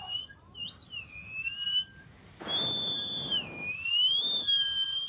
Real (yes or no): yes